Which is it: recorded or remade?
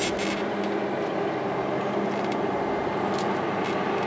recorded